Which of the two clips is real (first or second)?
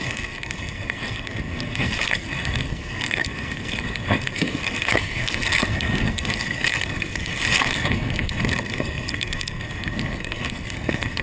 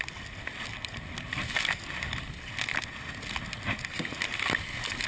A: second